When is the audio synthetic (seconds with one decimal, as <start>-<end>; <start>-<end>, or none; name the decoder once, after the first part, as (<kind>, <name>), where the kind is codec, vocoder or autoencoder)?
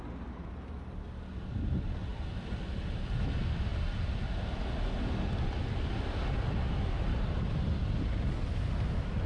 2.1-3.2 (vocoder, BigVGAN v2); 7.1-9.3